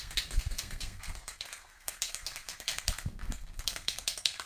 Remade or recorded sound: remade